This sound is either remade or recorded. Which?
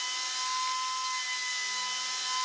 recorded